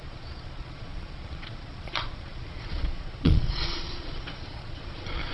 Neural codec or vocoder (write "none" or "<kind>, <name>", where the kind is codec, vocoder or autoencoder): vocoder, Vocos